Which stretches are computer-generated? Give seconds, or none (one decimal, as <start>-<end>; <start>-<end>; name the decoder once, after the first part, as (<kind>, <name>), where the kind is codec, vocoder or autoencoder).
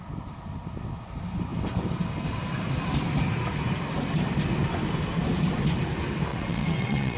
6.3-7.2 (vocoder, WaveNeXt)